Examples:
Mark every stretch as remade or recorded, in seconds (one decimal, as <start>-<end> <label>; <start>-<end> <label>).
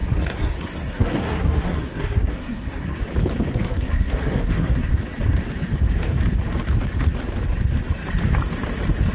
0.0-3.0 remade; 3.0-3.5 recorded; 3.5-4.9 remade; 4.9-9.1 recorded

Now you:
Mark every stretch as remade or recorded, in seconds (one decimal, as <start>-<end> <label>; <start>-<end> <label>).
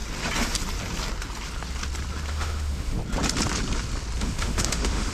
0.0-2.3 recorded; 2.3-3.0 remade; 3.0-4.2 recorded; 4.2-5.1 remade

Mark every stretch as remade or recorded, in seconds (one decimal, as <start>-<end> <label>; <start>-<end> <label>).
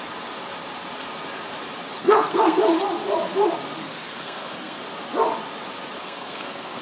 0.0-2.0 recorded; 2.0-2.6 remade; 2.6-3.8 recorded; 3.8-4.8 remade; 4.8-6.0 recorded; 6.0-6.8 remade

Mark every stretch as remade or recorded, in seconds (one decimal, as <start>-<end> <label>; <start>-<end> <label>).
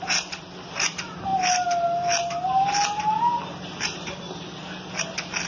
0.0-5.5 recorded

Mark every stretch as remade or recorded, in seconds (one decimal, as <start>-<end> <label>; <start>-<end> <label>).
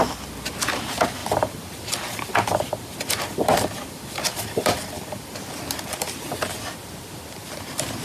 0.0-1.2 recorded; 1.2-5.5 remade; 5.5-8.0 recorded